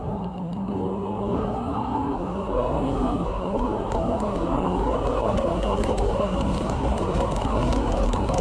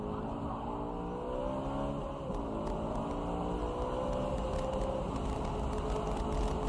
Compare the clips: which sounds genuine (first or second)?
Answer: second